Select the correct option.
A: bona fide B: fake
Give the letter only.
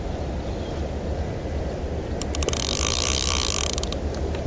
A